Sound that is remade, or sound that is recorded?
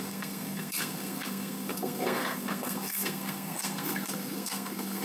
remade